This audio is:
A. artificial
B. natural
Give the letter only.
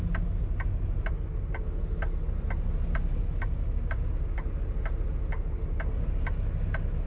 B